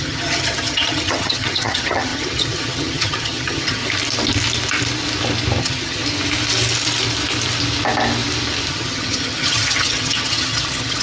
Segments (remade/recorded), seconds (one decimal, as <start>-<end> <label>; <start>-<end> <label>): 0.0-3.8 remade; 3.8-5.6 recorded; 5.6-6.0 remade; 6.0-8.7 recorded; 8.7-11.0 remade